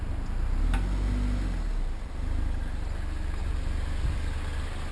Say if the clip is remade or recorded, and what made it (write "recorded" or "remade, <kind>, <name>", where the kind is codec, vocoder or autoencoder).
recorded